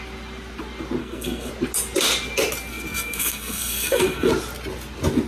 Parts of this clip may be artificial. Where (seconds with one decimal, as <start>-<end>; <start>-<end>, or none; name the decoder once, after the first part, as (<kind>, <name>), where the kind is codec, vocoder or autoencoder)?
1.0-1.5 (codec, SNAC); 2.7-4.3

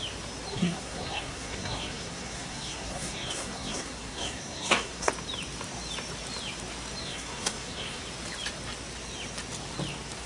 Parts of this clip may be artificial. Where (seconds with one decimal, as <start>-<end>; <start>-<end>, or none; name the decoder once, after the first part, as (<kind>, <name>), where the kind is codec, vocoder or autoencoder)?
0.5-5.1 (codec, SNAC); 7.0-8.0

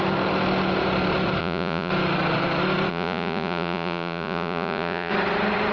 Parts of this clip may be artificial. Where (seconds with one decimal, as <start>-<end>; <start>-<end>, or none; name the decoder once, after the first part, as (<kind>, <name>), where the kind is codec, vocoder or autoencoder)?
1.4-1.9 (vocoder, Vocos); 2.9-5.1

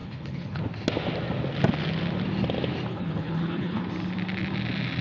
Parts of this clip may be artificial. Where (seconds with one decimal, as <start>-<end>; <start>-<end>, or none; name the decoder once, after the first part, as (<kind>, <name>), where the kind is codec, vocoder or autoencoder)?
0.0-0.6 (codec, HILCodec); 2.9-3.9

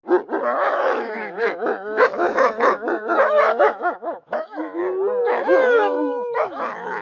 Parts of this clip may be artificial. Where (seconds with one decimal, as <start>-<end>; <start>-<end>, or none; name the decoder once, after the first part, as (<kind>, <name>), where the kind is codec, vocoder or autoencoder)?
0.6-4.8 (autoencoder, DAC-VAE); 5.2-7.0

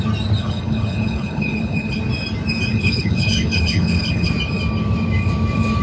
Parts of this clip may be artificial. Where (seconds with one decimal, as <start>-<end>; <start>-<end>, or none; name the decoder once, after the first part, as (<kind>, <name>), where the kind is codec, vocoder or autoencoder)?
0.4-2.0 (codec, HILCodec); 2.7-4.3